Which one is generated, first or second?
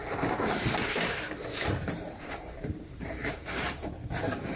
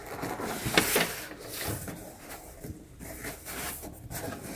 first